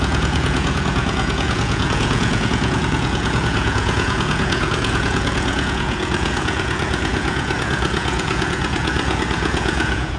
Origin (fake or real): fake